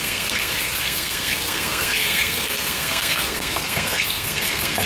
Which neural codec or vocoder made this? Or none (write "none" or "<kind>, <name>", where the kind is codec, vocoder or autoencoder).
codec, SNAC